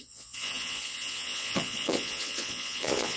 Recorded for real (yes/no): no